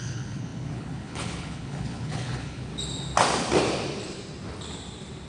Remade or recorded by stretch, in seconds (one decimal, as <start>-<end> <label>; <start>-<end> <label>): 0.0-2.7 remade; 2.7-5.3 recorded